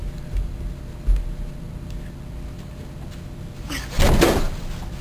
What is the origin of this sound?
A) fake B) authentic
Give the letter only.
B